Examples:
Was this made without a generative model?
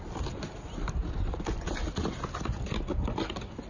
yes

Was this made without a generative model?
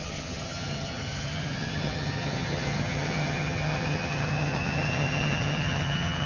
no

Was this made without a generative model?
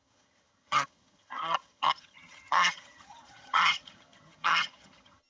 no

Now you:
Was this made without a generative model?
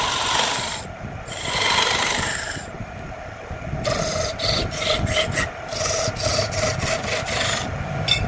yes